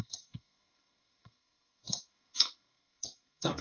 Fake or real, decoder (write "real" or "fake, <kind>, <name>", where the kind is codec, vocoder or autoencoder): fake, codec, SNAC